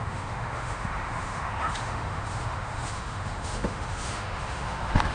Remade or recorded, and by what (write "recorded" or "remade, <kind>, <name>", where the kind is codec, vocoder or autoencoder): remade, autoencoder, DAC-VAE